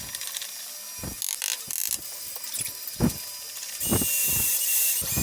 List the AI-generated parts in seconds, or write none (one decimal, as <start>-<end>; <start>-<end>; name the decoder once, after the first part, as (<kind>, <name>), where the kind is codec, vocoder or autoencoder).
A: 4.2-5.2 (vocoder, BigVGAN v2)